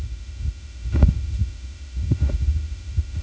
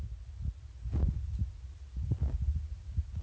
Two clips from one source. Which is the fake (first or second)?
first